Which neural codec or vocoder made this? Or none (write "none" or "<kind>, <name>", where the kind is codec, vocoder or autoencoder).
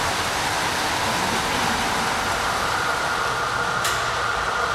vocoder, BigVGAN v2